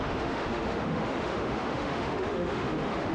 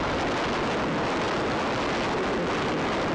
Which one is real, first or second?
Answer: second